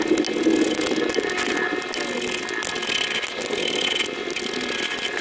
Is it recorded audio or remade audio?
recorded